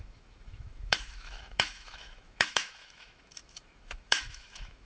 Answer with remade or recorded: remade